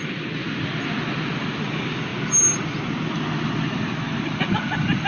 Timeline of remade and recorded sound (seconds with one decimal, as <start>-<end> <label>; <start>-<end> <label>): 0.0-5.1 recorded